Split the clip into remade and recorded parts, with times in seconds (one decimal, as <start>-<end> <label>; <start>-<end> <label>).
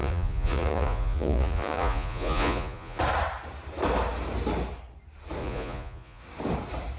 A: 0.0-3.0 remade; 3.0-5.4 recorded; 5.4-6.2 remade; 6.2-7.0 recorded